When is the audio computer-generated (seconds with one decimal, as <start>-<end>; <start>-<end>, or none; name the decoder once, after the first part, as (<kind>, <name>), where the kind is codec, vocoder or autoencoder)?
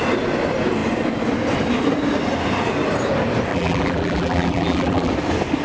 3.5-5.1 (vocoder, BigVGAN v2)